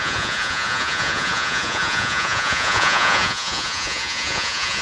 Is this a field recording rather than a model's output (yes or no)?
no